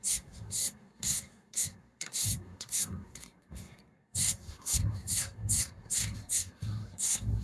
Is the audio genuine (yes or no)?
no